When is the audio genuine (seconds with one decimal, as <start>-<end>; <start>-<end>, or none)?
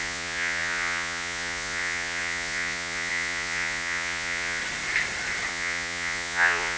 4.6-5.5